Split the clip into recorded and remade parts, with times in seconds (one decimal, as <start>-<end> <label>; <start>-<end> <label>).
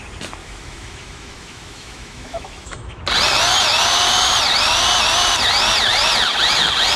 0.0-0.4 recorded; 0.4-3.0 remade; 3.0-7.0 recorded